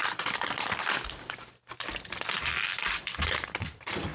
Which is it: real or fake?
fake